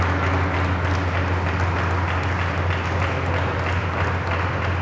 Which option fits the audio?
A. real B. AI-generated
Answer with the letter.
A